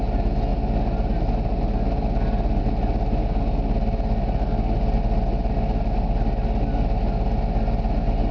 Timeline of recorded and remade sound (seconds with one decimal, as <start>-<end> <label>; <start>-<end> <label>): 0.0-8.3 recorded